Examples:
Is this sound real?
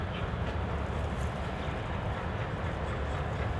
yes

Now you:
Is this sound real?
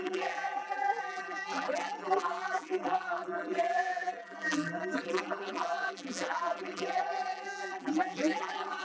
no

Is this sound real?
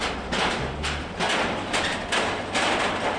yes